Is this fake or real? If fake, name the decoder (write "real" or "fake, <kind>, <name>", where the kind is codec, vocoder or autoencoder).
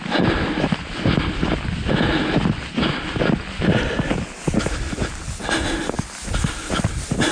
real